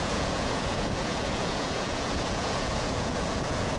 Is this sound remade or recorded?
remade